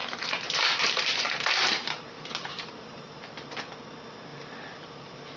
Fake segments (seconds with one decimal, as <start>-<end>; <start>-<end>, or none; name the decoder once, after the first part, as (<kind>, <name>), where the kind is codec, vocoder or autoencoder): 0.0-3.2 (vocoder, BigVGAN v2); 4.3-5.4